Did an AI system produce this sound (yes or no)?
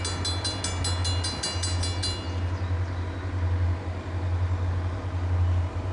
no